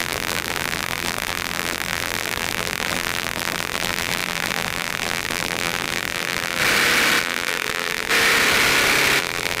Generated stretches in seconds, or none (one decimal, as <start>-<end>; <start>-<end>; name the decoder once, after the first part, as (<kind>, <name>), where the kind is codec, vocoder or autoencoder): 0.0-6.6 (vocoder, BigVGAN v2); 7.2-8.1; 9.2-9.6